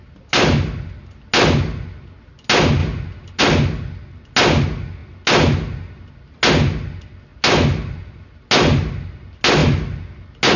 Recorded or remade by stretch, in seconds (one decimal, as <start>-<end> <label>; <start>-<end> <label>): 0.0-10.6 recorded